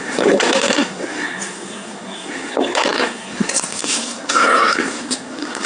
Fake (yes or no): yes